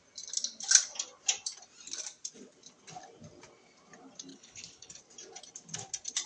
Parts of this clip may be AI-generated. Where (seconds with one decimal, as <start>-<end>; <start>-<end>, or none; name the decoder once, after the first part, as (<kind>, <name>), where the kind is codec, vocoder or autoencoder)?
4.3-5.0 (codec, HILCodec)